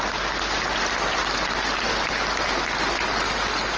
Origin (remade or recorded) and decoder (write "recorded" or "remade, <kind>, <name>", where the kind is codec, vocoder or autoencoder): recorded